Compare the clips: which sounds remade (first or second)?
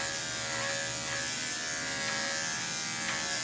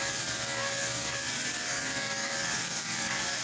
second